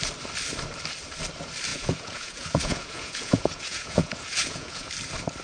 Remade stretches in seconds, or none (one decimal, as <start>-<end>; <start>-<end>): 1.7-4.9